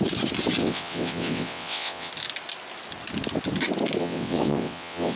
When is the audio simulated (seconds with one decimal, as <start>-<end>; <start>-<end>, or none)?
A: 0.6-2.1; 4.0-5.2